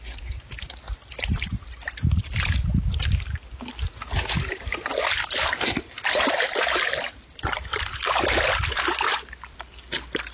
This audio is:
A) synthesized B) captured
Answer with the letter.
B